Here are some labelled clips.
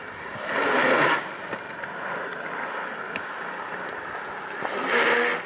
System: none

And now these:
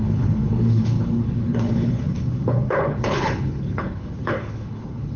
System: codec, HILCodec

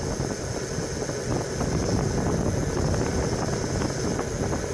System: none